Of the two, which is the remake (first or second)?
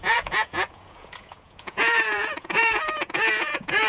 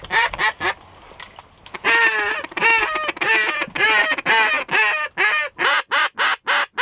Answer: first